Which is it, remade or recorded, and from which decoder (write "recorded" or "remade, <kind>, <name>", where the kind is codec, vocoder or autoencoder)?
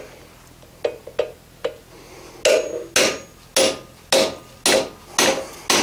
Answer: recorded